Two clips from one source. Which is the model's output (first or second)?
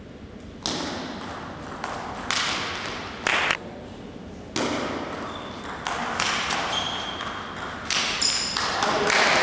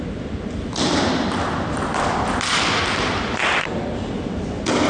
second